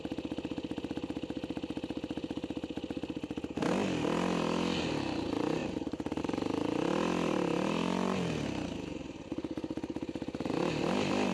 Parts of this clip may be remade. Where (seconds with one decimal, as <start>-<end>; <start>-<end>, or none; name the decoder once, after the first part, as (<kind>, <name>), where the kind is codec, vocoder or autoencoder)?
none